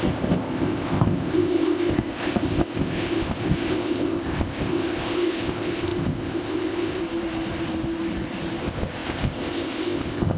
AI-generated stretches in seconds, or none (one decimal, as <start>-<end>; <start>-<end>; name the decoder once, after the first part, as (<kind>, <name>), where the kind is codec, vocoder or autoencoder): 0.0-7.0 (codec, ZipCodec); 8.6-10.4